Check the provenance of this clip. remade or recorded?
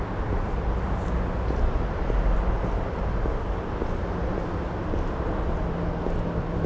recorded